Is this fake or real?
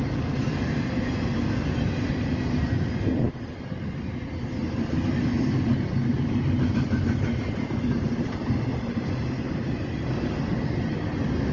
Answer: real